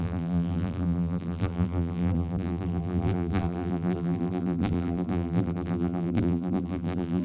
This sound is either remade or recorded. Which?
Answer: remade